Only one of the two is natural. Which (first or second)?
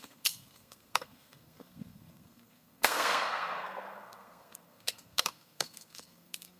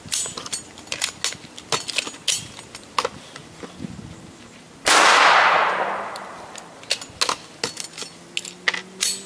second